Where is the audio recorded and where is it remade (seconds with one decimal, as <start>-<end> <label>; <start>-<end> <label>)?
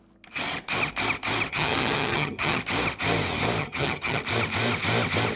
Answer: 0.0-1.5 recorded; 1.5-2.6 remade; 2.6-3.6 recorded; 3.6-4.2 remade; 4.2-5.4 recorded